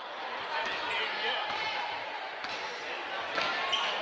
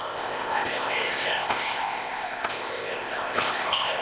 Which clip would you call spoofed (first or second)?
second